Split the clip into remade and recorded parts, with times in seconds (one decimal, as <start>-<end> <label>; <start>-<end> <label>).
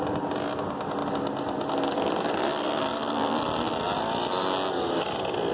0.0-5.5 recorded